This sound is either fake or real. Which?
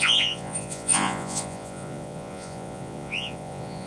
fake